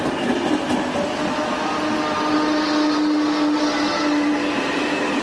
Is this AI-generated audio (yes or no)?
no